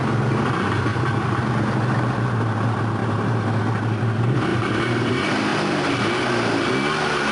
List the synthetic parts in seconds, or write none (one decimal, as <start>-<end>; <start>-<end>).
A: 0.9-1.4; 3.0-3.6; 4.5-5.1

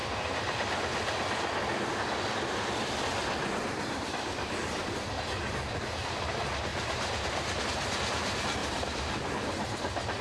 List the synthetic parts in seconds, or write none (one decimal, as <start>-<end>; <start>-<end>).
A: 0.0-5.2; 6.7-7.6; 8.6-9.1